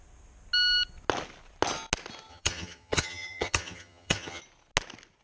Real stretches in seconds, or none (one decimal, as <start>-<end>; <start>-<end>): 0.0-2.3; 4.4-5.2